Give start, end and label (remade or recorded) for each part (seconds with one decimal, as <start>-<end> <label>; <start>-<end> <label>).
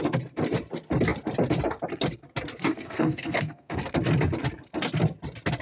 0.0-2.7 recorded; 2.7-3.8 remade; 3.8-5.6 recorded